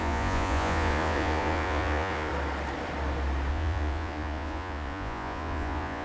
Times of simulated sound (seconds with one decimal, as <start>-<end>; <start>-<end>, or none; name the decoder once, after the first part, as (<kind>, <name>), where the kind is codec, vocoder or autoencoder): 0.0-2.3 (vocoder, Vocos); 3.5-6.0